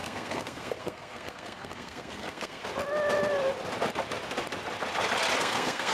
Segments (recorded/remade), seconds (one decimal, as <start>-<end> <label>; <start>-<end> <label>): 0.0-2.6 remade; 2.6-5.4 recorded; 5.4-5.9 remade